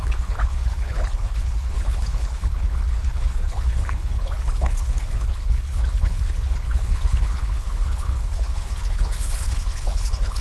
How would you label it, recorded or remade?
remade